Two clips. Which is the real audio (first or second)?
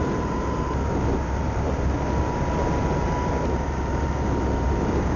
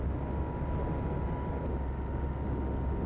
second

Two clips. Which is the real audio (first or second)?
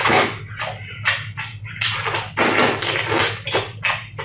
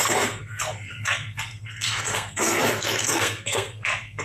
first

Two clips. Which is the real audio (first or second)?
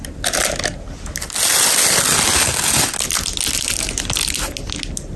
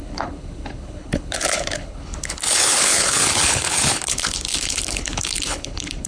first